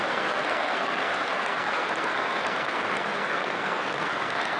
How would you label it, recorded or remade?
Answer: remade